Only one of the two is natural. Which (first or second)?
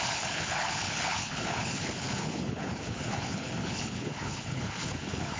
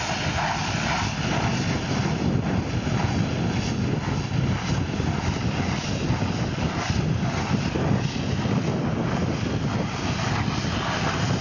second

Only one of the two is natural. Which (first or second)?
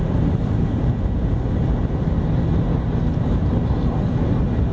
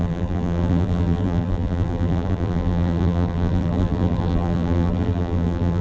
first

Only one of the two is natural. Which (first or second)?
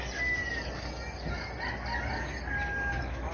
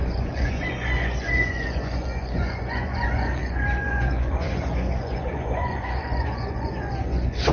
first